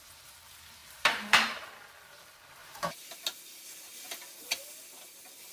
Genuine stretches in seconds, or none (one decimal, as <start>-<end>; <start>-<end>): 0.0-0.8; 1.9-2.6; 3.2-5.5